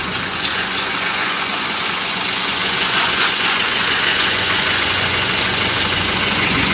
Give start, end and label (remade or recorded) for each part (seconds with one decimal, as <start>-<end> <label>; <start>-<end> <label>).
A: 0.0-6.7 remade